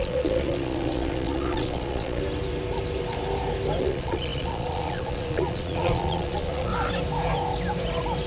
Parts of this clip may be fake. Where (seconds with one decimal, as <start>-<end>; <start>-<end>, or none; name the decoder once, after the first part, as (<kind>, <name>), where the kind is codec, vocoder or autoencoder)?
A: 0.0-2.2 (vocoder, Vocos); 3.8-6.7